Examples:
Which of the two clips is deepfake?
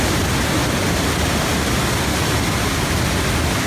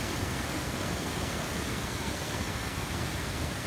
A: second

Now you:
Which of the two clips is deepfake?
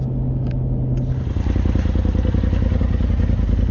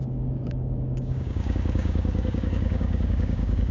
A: second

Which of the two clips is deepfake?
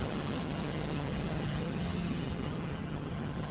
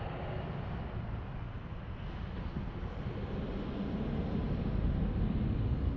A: first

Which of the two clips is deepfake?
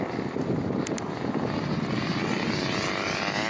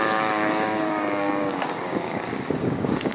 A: second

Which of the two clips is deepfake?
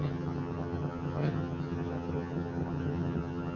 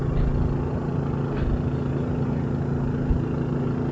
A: first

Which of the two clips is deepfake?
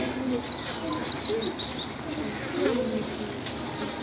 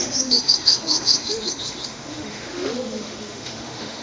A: second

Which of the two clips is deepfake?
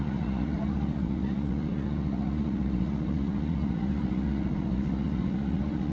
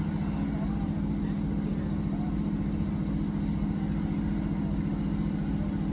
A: first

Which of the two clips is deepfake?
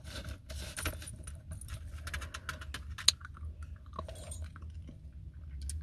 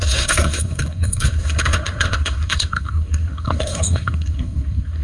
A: second